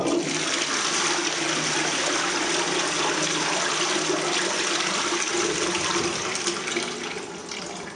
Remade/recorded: recorded